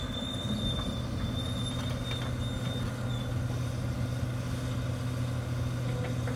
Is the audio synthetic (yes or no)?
no